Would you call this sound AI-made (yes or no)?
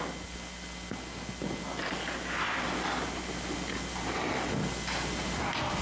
no